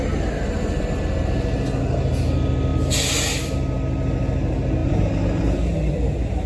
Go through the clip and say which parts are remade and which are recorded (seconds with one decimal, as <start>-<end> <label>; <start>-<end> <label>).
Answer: 0.0-6.5 recorded